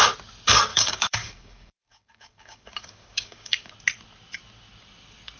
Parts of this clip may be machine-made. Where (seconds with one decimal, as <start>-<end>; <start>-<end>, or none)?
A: 0.7-3.7